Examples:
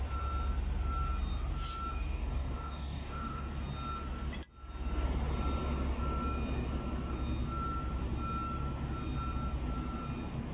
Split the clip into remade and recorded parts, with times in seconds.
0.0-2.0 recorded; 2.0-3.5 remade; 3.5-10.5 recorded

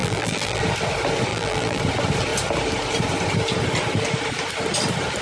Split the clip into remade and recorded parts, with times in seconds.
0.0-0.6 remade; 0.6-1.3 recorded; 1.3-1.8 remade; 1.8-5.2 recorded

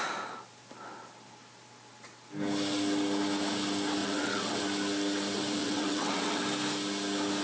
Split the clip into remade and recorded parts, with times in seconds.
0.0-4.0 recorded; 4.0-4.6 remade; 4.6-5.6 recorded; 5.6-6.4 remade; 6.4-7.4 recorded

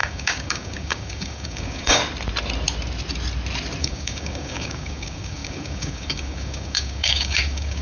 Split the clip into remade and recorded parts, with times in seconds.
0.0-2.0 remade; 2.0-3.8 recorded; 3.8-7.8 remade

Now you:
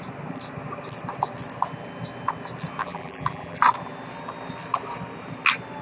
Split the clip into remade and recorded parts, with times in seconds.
0.0-2.8 recorded; 2.8-3.6 remade; 3.6-5.8 recorded

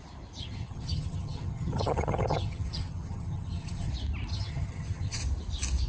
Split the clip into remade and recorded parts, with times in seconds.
0.0-0.4 recorded; 0.4-3.9 remade; 3.9-4.3 recorded; 4.3-5.2 remade; 5.2-5.9 recorded